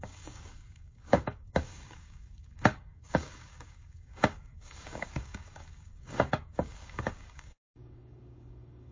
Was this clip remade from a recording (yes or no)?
yes